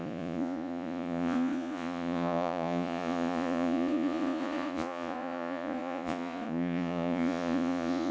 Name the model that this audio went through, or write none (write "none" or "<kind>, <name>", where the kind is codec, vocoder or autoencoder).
vocoder, Vocos